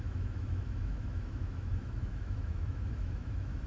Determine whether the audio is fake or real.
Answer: fake